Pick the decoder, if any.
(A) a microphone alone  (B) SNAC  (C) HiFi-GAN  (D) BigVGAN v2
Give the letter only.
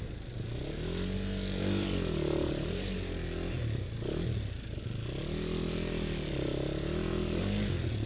A